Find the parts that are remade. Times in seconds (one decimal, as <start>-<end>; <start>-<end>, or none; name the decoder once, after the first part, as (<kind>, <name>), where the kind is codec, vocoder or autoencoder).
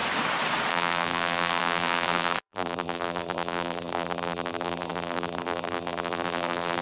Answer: 0.7-6.8 (vocoder, BigVGAN v2)